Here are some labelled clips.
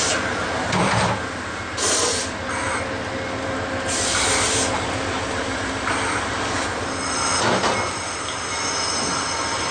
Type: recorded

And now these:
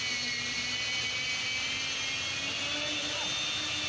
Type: recorded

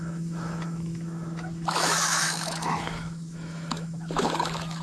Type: remade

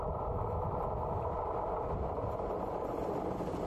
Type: recorded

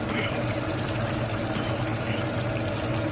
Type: recorded